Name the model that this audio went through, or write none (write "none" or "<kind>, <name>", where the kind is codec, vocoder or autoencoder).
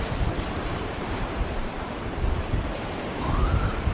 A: vocoder, BigVGAN v2